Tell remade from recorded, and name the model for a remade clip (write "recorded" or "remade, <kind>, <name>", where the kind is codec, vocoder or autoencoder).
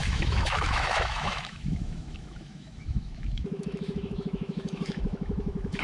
remade, autoencoder, DAC-VAE